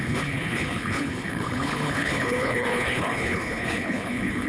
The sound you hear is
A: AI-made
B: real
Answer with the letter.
A